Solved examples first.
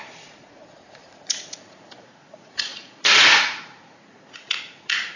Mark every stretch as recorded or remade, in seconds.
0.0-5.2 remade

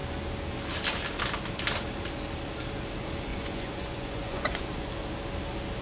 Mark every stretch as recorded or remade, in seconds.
0.0-3.3 recorded; 3.3-4.9 remade; 4.9-5.8 recorded

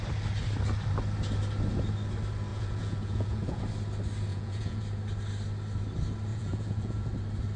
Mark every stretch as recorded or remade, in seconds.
0.0-2.5 recorded; 2.5-3.6 remade; 3.6-4.3 recorded; 4.3-4.8 remade; 4.8-6.3 recorded; 6.3-7.1 remade; 7.1-7.6 recorded

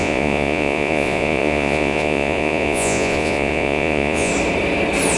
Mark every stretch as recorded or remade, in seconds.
0.0-4.3 remade; 4.3-5.2 recorded

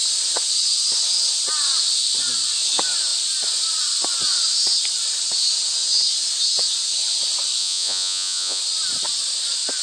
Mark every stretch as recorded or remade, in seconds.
0.0-7.6 recorded; 7.6-8.6 remade; 8.6-9.8 recorded